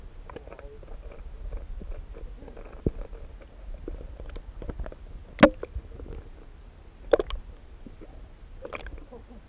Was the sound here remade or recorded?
recorded